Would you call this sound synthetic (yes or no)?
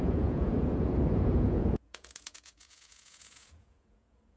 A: yes